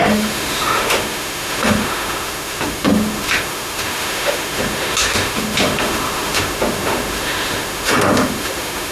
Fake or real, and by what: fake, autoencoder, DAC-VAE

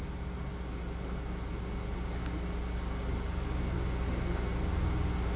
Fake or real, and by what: real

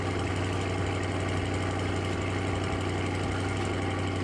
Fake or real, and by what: real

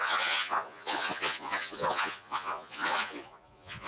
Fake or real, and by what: fake, vocoder, Vocos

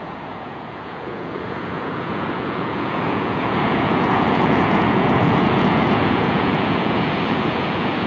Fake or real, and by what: fake, vocoder, Vocos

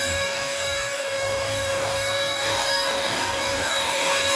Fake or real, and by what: fake, codec, DAC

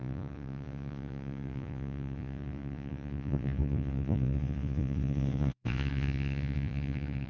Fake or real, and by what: fake, vocoder, Vocos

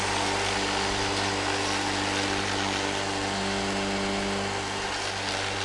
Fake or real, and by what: real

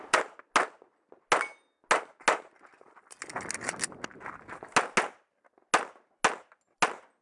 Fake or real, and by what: real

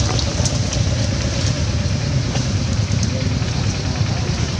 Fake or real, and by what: real